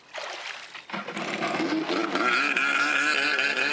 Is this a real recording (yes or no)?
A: yes